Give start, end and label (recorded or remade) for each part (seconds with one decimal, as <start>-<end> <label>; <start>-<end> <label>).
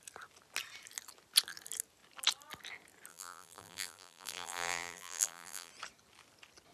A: 0.0-3.1 recorded; 3.1-5.7 remade; 5.7-6.7 recorded